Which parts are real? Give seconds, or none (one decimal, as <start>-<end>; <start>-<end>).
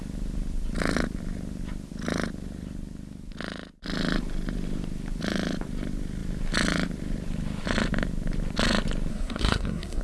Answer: 0.0-9.1